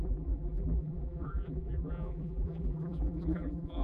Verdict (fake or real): fake